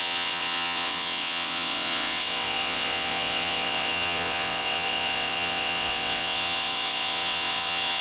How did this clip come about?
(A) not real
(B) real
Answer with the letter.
A